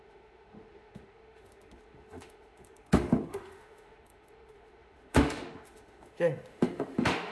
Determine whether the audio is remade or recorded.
remade